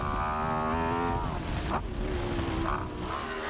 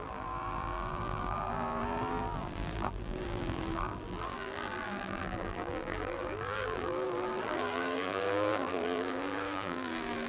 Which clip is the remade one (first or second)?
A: second